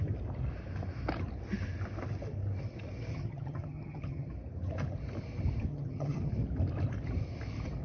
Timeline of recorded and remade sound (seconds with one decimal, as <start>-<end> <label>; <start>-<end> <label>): 0.0-3.1 recorded; 3.1-4.3 remade; 4.3-5.7 recorded; 5.7-6.3 remade; 6.3-7.8 recorded